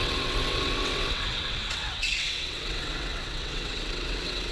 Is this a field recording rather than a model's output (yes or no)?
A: no